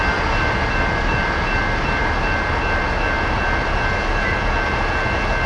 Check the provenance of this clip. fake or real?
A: real